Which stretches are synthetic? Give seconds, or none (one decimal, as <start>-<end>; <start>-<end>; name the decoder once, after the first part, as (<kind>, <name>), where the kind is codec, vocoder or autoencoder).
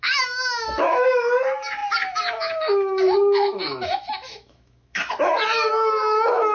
0.0-6.5 (autoencoder, DAC-VAE)